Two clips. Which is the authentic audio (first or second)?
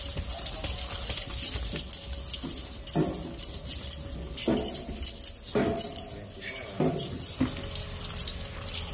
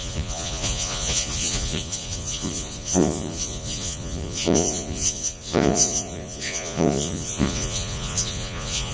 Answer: first